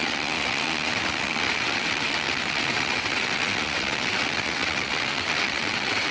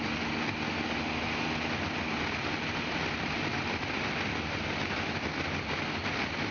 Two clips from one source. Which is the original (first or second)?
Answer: second